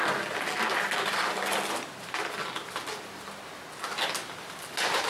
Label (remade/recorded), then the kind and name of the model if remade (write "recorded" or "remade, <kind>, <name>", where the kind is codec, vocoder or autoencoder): recorded